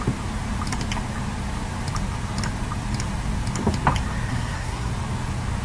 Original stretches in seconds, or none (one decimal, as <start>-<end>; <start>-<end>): 0.0-4.3; 4.9-5.6